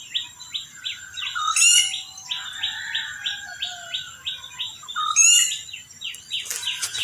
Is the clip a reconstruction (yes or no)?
no